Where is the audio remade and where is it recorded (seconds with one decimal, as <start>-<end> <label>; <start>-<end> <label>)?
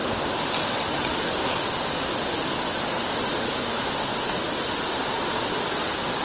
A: 0.0-6.2 recorded